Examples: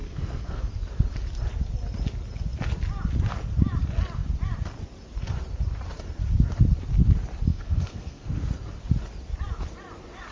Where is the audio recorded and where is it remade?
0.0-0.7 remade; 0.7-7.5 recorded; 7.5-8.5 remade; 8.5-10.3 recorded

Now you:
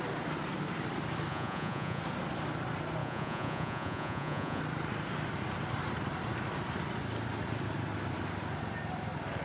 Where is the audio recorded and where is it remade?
0.0-1.3 recorded; 1.3-2.0 remade; 2.0-3.0 recorded; 3.0-4.6 remade; 4.6-9.4 recorded

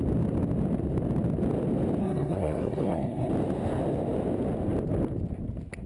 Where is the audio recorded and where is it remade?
0.0-2.0 recorded; 2.0-3.3 remade; 3.3-5.9 recorded

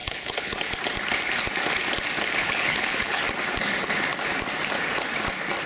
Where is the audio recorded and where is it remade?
0.0-0.6 remade; 0.6-2.4 recorded; 2.4-3.2 remade; 3.2-5.7 recorded